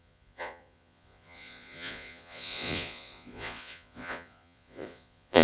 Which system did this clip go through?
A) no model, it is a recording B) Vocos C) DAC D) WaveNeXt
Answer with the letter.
B